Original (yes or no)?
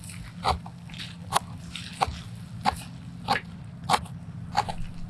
yes